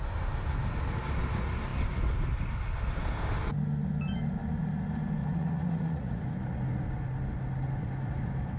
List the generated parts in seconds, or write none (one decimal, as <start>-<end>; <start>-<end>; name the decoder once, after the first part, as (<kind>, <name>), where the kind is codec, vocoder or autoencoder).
5.2-6.2 (vocoder, Vocos)